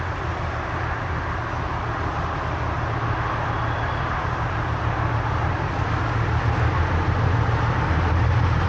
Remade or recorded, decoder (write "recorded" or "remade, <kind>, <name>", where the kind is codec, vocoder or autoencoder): recorded